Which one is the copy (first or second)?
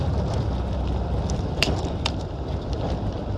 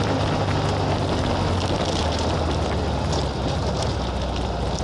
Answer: first